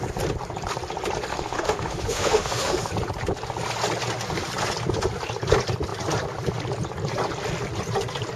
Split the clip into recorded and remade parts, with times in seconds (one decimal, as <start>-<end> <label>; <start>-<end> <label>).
0.0-1.3 recorded; 1.3-2.9 remade; 2.9-8.4 recorded